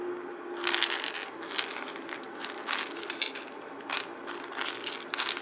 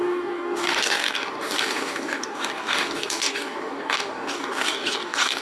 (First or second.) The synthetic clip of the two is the second